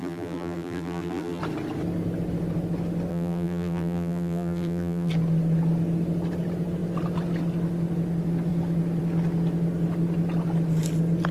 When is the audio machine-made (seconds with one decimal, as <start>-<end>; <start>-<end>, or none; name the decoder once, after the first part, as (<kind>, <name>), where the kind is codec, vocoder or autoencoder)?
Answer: 0.0-1.4 (vocoder, BigVGAN v2); 3.1-5.1